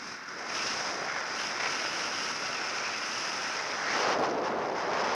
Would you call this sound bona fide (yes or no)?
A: yes